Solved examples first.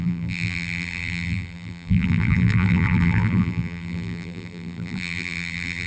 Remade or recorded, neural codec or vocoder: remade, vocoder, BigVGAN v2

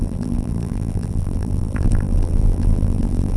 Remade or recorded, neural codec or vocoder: remade, vocoder, BigVGAN v2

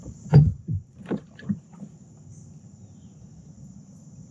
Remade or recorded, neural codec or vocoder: remade, vocoder, BigVGAN v2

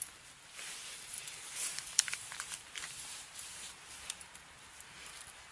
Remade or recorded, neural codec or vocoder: remade, vocoder, BigVGAN v2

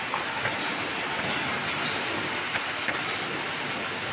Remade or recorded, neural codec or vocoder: recorded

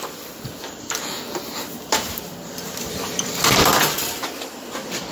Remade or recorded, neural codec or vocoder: remade, vocoder, BigVGAN v2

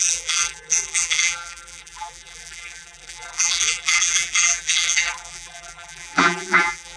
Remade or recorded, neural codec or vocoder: remade, vocoder, BigVGAN v2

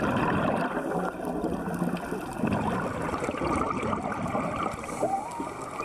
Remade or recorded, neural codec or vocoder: recorded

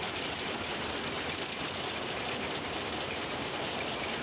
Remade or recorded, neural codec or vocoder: remade, vocoder, BigVGAN v2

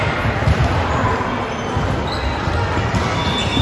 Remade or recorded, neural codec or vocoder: recorded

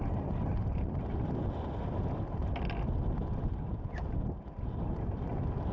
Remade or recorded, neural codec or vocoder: recorded